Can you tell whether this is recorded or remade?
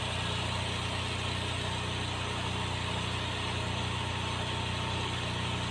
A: recorded